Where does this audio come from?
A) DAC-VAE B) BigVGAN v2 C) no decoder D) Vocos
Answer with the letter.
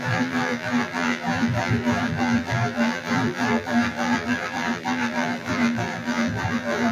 B